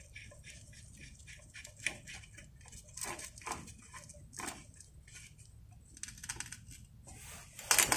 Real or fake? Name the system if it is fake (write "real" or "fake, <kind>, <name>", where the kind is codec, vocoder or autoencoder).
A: real